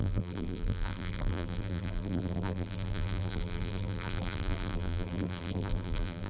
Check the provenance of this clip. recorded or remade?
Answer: remade